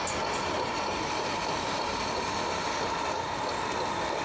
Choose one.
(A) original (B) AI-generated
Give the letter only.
A